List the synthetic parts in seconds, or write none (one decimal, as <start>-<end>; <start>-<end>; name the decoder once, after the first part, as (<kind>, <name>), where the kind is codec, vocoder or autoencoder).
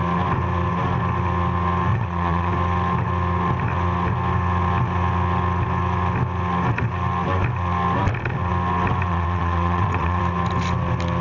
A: 1.9-2.5 (vocoder, WaveNeXt); 9.1-10.2